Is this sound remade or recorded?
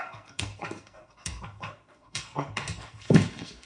remade